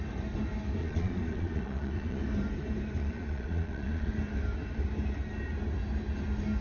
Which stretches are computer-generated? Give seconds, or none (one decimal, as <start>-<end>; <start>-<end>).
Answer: 0.8-2.2; 3.0-4.1